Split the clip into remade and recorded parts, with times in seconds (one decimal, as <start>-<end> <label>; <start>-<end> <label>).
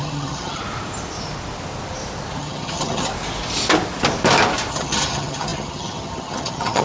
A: 0.0-0.6 remade; 0.6-2.4 recorded; 2.4-3.1 remade; 3.1-4.7 recorded; 4.7-6.8 remade